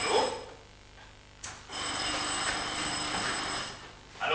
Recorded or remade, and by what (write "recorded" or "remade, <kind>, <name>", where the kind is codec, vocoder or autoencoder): recorded